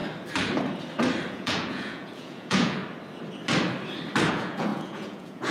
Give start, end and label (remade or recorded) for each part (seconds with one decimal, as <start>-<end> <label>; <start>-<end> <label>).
0.0-1.3 recorded; 1.3-2.8 remade; 2.8-4.3 recorded; 4.3-5.5 remade